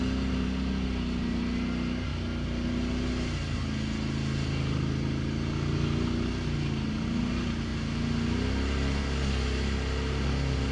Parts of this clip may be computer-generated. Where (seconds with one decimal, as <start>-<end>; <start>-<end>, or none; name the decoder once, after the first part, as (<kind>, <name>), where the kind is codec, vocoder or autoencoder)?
none